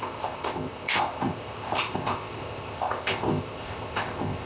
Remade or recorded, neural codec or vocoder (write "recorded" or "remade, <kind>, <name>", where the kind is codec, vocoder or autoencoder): remade, codec, ZipCodec